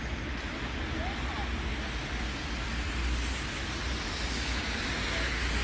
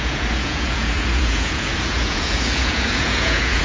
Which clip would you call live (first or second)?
first